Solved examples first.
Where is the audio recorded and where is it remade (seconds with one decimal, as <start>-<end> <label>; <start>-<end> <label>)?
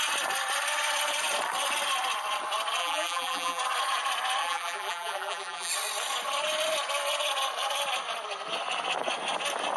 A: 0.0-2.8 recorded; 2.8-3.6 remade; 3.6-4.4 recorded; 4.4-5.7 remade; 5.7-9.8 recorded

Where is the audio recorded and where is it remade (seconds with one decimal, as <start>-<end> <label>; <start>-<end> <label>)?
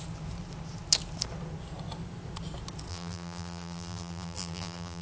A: 0.0-2.9 recorded; 2.9-5.0 remade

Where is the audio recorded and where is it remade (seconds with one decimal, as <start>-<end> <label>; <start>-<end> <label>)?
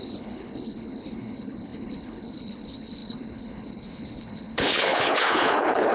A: 0.0-5.9 remade